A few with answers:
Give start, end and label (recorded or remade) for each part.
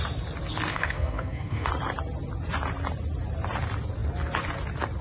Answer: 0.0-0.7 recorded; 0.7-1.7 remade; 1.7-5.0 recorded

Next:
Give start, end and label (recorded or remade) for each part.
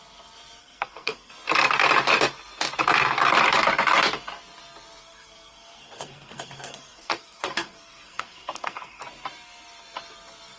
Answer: 0.0-0.6 recorded; 0.6-1.3 remade; 1.3-5.0 recorded; 5.0-9.0 remade; 9.0-10.6 recorded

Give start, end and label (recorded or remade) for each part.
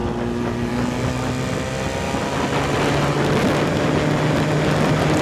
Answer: 0.0-5.2 recorded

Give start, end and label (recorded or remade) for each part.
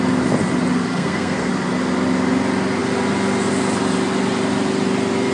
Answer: 0.0-0.9 recorded; 0.9-1.5 remade; 1.5-5.3 recorded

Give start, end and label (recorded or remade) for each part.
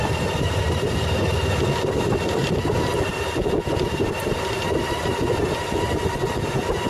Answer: 0.0-6.9 recorded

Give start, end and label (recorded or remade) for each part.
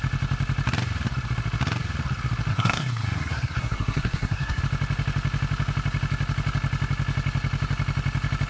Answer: 0.0-2.5 recorded; 2.5-4.6 remade; 4.6-8.5 recorded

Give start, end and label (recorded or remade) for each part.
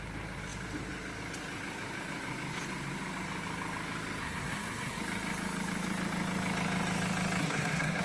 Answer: 0.0-4.2 recorded; 4.2-5.0 remade; 5.0-7.4 recorded; 7.4-8.0 remade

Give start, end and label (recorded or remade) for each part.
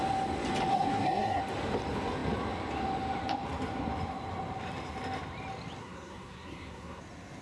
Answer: 0.0-0.7 recorded; 0.7-1.4 remade; 1.4-5.8 recorded; 5.8-7.0 remade; 7.0-7.4 recorded